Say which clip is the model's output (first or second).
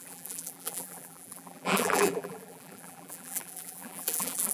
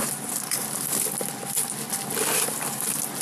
first